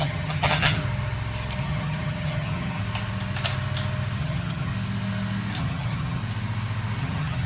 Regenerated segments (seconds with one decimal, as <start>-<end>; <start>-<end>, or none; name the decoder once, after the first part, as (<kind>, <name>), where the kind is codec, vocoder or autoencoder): 0.0-0.8 (vocoder, HiFi-GAN); 1.6-2.8; 4.2-4.7; 5.6-6.2; 7.0-7.5